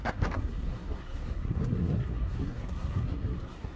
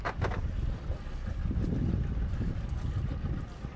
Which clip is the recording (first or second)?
second